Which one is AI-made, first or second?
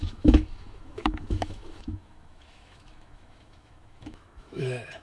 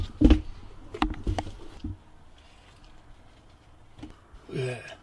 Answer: first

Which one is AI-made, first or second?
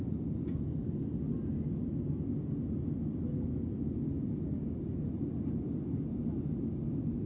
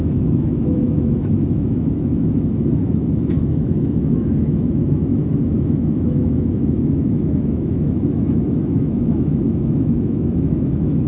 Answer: second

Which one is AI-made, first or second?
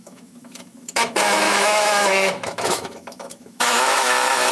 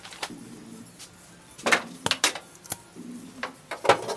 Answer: first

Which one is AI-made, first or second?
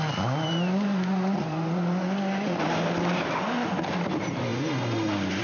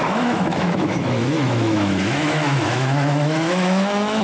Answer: second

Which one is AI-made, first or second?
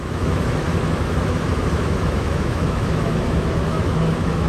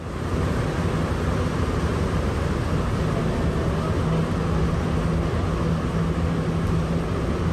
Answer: first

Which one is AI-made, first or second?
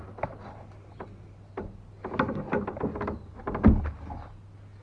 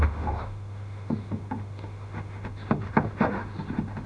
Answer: second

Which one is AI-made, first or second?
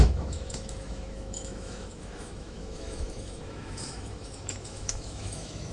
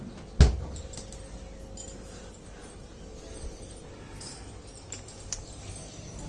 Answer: first